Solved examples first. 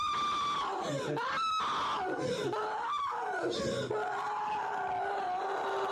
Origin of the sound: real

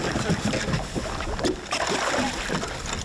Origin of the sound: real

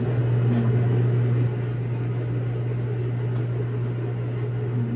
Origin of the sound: real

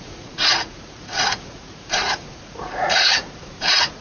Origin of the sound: fake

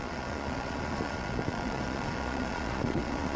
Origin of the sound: fake